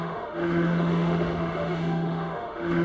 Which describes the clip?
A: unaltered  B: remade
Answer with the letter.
B